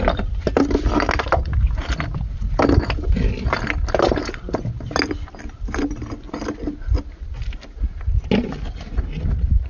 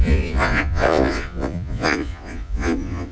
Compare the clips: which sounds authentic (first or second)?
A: first